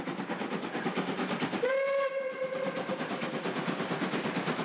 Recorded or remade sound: recorded